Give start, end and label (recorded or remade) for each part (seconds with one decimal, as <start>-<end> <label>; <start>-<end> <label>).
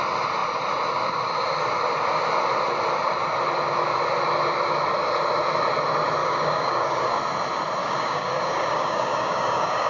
0.0-6.2 recorded; 6.2-7.2 remade; 7.2-7.8 recorded; 7.8-9.9 remade